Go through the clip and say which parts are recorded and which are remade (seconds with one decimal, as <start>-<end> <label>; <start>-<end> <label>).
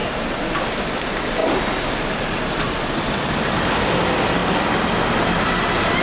0.0-6.0 recorded